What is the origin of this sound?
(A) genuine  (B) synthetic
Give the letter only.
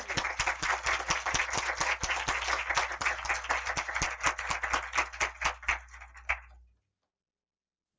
A